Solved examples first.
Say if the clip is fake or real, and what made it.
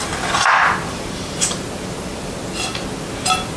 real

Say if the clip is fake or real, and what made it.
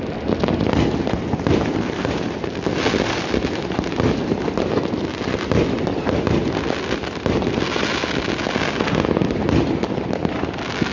real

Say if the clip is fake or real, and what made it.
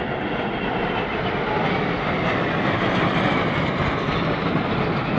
real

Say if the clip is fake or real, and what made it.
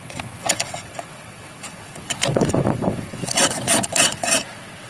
fake, vocoder, WaveNeXt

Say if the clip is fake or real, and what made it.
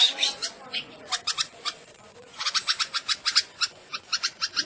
fake, vocoder, Vocos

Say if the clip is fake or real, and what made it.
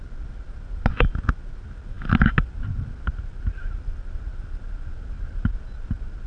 real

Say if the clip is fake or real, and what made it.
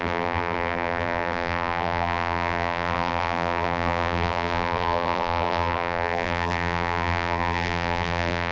fake, vocoder, BigVGAN v2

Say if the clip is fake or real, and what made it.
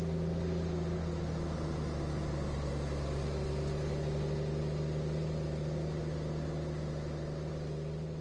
real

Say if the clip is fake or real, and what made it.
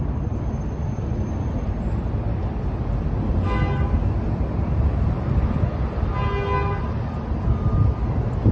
real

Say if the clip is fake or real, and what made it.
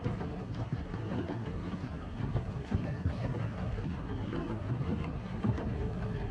fake, codec, SNAC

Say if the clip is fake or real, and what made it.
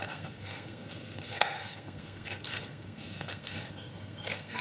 fake, codec, SNAC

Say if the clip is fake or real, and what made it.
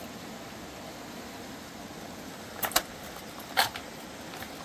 real